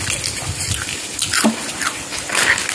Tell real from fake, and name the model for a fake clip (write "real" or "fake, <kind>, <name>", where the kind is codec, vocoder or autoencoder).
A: real